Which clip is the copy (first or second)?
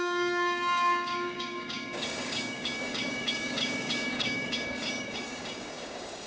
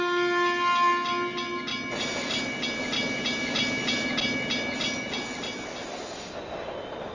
first